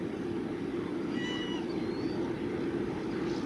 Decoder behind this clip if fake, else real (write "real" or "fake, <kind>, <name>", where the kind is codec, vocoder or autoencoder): real